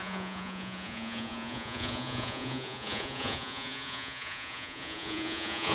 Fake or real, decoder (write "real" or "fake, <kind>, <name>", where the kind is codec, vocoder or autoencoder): fake, vocoder, Vocos